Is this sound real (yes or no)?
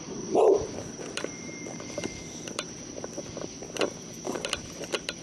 no